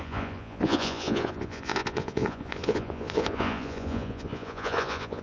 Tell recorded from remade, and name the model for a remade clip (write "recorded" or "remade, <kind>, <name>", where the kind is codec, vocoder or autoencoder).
remade, vocoder, Vocos